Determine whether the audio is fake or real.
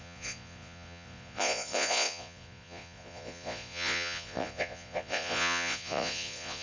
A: fake